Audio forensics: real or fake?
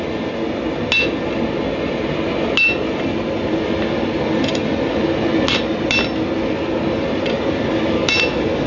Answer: real